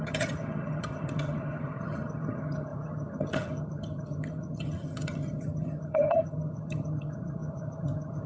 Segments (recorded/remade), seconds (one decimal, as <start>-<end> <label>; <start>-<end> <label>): 0.0-8.3 remade